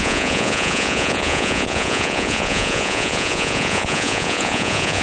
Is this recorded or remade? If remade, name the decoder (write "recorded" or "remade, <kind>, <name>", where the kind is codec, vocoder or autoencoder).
remade, vocoder, Vocos